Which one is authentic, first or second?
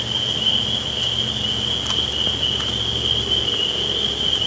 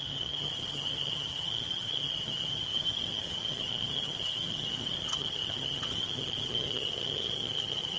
first